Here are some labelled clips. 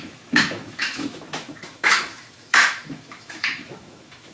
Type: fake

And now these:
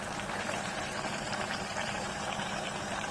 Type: fake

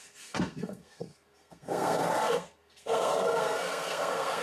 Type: fake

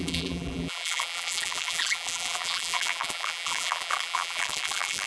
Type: fake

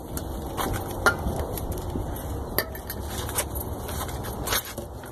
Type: real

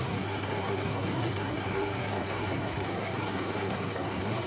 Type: fake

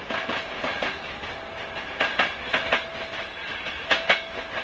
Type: real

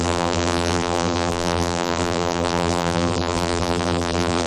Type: fake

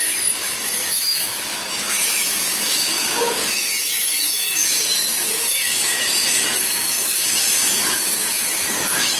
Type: fake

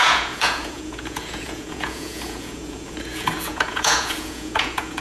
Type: fake